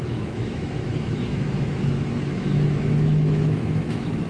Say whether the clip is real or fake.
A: fake